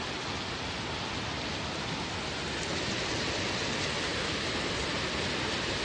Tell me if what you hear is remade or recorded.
recorded